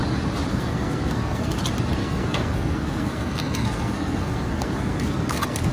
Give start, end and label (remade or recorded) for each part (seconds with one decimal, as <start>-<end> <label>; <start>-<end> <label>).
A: 0.0-0.5 recorded; 0.5-1.6 remade; 1.6-2.0 recorded; 2.0-5.7 remade